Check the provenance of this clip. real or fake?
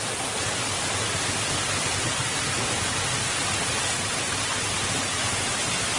real